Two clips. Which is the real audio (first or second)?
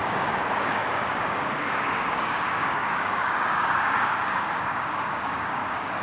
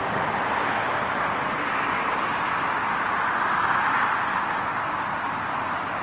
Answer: second